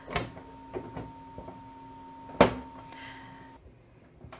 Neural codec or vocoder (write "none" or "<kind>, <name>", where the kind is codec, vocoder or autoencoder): none